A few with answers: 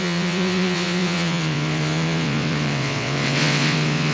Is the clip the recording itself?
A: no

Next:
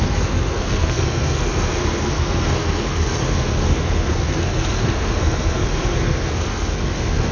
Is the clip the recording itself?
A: no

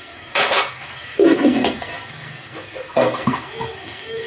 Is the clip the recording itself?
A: no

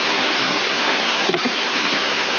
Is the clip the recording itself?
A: no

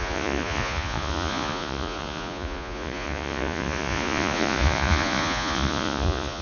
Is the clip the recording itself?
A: no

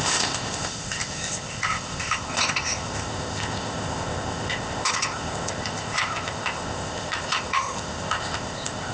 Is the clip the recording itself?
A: no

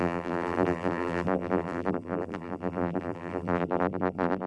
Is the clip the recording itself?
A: no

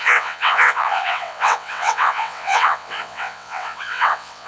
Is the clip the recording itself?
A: no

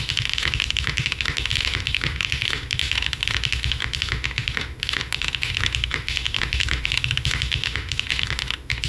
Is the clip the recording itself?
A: no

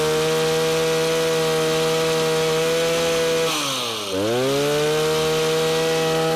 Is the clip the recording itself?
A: yes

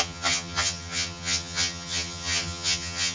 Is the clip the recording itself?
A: no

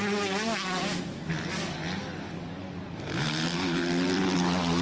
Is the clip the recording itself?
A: yes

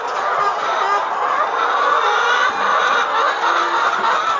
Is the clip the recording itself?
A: yes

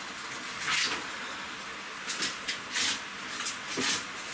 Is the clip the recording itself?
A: yes